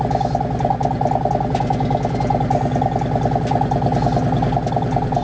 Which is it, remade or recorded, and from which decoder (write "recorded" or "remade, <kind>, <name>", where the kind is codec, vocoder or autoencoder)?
recorded